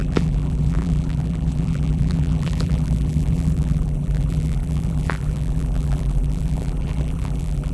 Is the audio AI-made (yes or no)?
yes